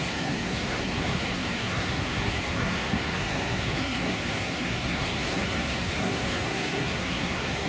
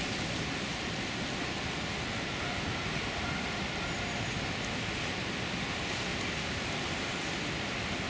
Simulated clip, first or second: first